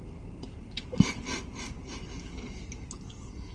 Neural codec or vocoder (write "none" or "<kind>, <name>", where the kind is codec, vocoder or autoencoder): none